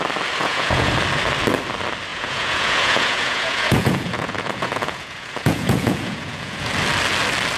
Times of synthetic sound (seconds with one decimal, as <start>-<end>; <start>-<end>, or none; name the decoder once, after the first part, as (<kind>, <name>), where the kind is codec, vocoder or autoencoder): 0.4-0.9 (vocoder, Vocos); 2.1-6.7

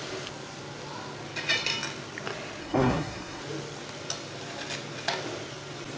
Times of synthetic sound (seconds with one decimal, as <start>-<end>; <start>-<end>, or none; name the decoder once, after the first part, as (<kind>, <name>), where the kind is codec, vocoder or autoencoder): 2.6-3.4 (codec, SNAC)

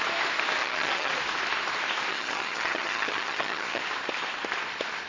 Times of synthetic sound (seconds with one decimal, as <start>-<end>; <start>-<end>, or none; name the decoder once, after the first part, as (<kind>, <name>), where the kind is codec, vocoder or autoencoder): 0.6-1.1 (vocoder, HiFi-GAN); 2.1-3.8

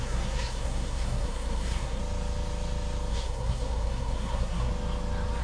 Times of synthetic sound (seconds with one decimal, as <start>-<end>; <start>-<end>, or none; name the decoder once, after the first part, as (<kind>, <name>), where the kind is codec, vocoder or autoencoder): 0.0-2.0 (codec, SNAC); 3.1-4.7

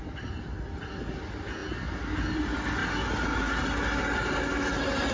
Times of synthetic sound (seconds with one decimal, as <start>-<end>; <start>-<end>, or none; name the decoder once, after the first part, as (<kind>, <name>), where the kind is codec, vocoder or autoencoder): 0.0-1.6 (vocoder, BigVGAN v2); 2.3-2.8

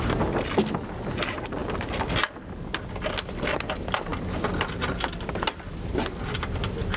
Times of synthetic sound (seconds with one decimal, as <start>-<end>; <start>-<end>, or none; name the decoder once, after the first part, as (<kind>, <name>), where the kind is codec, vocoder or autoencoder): none

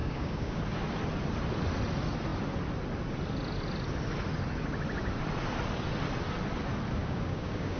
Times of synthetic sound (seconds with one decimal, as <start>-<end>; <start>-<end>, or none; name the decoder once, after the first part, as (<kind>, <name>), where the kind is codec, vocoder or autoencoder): 0.0-0.6 (codec, DAC); 7.0-7.8

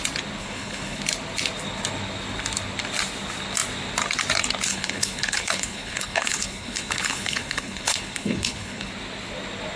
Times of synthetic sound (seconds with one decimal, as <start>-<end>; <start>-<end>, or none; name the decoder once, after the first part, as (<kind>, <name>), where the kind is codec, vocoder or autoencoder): 0.4-1.0 (codec, HILCodec); 4.7-8.9